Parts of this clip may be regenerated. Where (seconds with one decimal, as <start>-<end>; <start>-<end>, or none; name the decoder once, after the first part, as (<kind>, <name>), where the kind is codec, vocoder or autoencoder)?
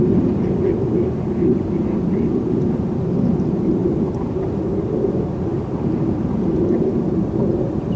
3.8-4.4 (vocoder, BigVGAN v2); 5.5-7.4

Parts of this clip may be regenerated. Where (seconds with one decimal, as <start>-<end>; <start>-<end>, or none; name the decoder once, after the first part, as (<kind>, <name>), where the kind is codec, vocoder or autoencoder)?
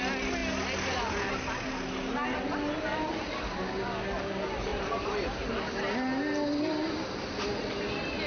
4.7-5.5 (vocoder, BigVGAN v2)